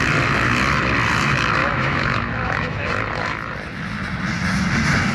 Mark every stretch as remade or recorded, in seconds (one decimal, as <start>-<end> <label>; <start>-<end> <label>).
0.0-1.6 recorded; 1.6-2.9 remade; 2.9-5.1 recorded